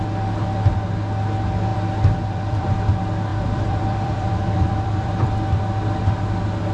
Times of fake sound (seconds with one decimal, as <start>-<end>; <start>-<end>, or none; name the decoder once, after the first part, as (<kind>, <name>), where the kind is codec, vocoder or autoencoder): 1.7-2.7 (vocoder, BigVGAN v2); 3.3-5.1